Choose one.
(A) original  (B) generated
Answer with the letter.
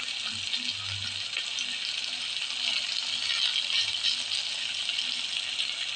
A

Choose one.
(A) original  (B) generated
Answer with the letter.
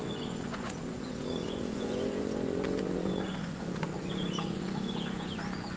B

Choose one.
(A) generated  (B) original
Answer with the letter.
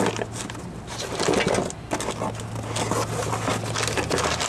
B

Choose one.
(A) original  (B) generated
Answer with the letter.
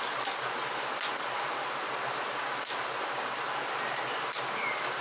A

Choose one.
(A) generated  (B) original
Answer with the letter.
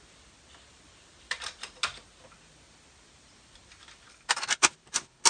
B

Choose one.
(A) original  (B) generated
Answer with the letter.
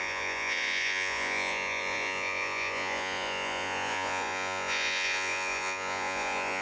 B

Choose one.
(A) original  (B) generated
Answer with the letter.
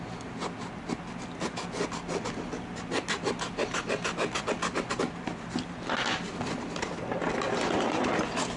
A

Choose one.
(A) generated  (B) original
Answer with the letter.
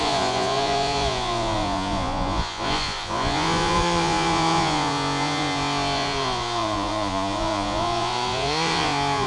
A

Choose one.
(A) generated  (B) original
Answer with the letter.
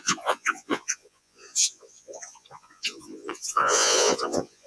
A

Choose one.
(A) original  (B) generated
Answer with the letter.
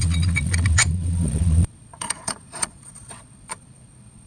B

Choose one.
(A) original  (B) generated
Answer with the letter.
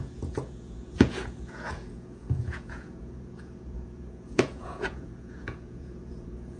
B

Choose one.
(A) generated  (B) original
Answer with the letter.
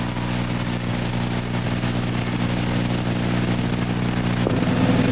B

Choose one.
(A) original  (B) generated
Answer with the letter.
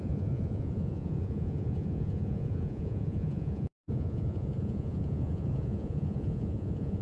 B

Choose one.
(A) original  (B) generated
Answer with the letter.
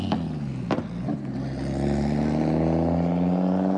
A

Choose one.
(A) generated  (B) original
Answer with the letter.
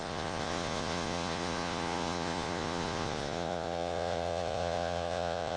A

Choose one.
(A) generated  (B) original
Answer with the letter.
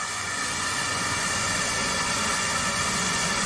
A